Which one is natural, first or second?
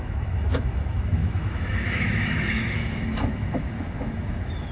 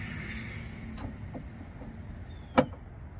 second